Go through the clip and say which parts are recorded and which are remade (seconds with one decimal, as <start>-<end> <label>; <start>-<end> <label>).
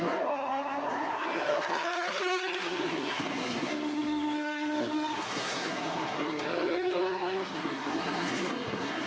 0.0-9.1 remade